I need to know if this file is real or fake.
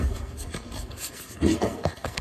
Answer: fake